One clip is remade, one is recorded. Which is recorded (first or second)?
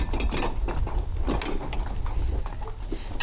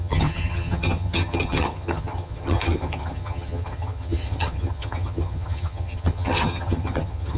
first